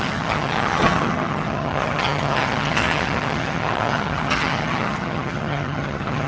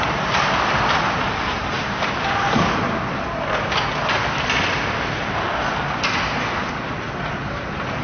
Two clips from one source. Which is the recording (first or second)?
second